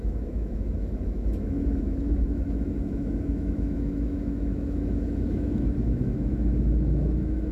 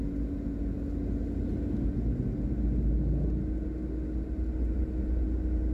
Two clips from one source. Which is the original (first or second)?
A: second